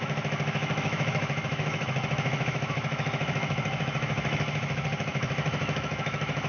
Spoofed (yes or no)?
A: yes